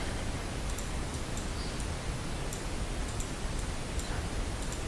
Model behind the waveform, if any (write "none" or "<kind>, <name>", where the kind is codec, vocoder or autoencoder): none